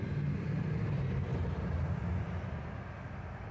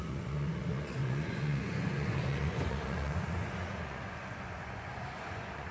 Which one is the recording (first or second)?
first